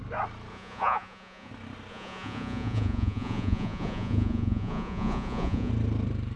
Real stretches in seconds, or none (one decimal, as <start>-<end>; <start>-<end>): 0.0-0.5; 1.5-1.9; 5.7-6.4